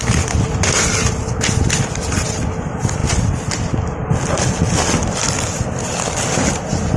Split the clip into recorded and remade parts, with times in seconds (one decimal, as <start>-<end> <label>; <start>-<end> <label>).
0.0-7.0 recorded